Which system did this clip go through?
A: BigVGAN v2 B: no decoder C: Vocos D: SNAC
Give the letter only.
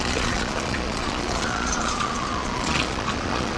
C